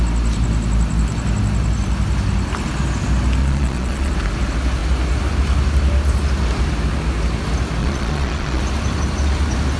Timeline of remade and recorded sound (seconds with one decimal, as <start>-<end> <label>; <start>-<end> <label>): 0.0-3.4 recorded; 3.4-4.1 remade; 4.1-7.8 recorded; 7.8-8.6 remade; 8.6-9.8 recorded